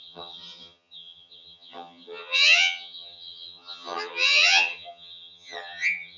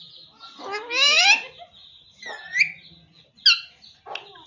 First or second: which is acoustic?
second